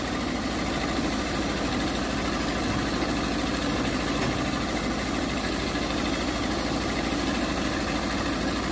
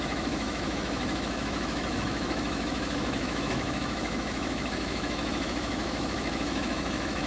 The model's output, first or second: second